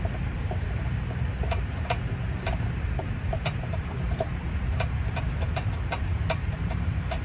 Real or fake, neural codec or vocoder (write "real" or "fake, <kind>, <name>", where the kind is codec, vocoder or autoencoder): fake, vocoder, BigVGAN v2